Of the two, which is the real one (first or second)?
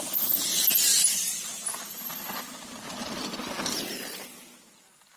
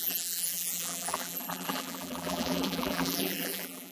first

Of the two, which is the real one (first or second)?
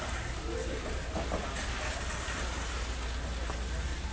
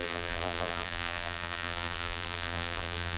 first